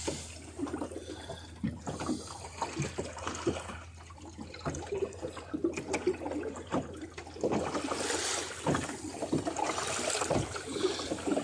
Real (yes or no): yes